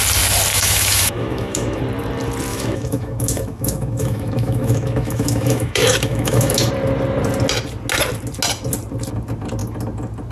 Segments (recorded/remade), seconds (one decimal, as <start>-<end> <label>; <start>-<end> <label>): 0.0-0.5 recorded; 0.5-1.8 remade; 1.8-2.5 recorded; 2.5-6.7 remade; 6.7-10.3 recorded